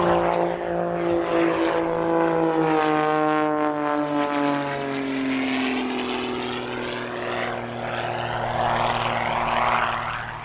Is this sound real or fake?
real